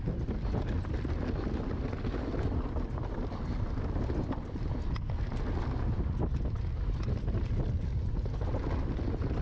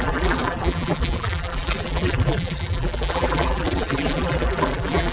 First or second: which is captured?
first